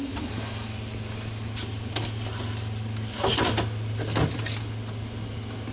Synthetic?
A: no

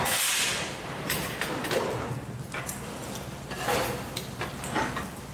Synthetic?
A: no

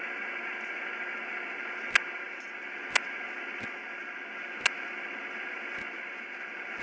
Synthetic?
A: no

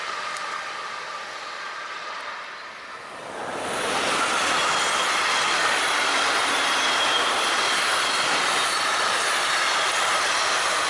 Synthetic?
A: no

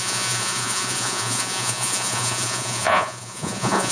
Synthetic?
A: yes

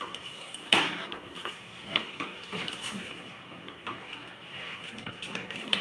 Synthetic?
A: yes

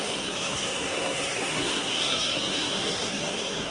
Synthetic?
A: yes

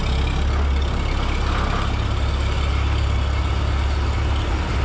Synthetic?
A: no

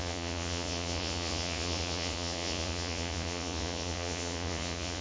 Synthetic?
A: yes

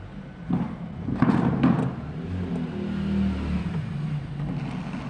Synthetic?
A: no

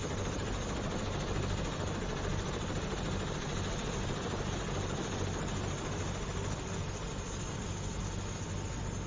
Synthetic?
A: no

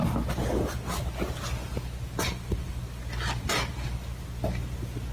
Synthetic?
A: no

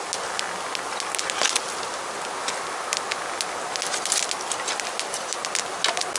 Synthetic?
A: no